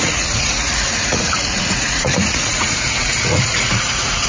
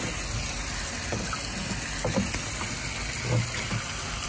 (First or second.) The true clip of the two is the second